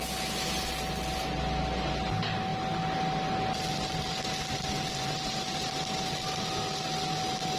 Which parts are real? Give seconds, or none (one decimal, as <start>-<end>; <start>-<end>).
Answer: 0.0-7.6